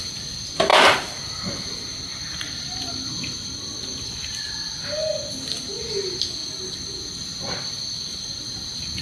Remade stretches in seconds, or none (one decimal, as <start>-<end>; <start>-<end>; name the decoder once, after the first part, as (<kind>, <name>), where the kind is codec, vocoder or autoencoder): 0.7-1.3 (vocoder, BigVGAN v2); 2.1-2.8